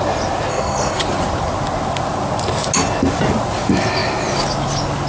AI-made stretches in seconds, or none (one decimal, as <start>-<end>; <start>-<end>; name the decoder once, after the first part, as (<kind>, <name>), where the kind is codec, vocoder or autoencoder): 0.5-1.0 (codec, SNAC)